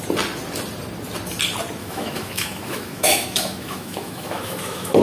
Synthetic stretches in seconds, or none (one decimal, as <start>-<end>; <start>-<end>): 1.8-5.0